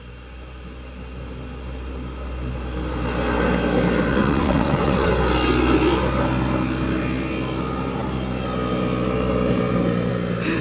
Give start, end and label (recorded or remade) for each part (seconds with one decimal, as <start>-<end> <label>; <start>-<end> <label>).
0.0-4.1 recorded; 4.1-5.1 remade; 5.1-10.6 recorded